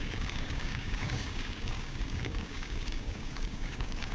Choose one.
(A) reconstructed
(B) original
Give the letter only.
A